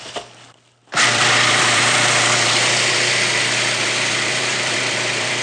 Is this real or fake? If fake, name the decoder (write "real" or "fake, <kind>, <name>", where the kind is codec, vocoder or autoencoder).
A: fake, vocoder, BigVGAN v2